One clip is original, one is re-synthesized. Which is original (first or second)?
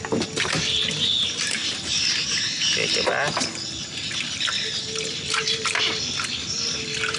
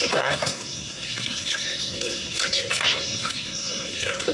first